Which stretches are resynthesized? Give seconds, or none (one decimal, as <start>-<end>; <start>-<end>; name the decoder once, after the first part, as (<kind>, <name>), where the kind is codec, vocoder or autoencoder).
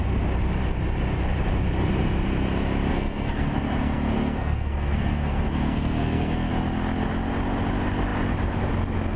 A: 2.9-6.5 (codec, SNAC)